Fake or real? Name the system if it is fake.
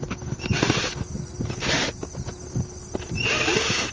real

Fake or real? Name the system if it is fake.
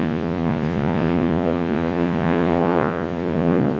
fake, vocoder, Vocos